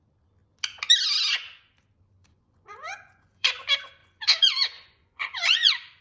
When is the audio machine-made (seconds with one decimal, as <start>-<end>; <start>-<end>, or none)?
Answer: 2.2-3.5; 4.0-6.0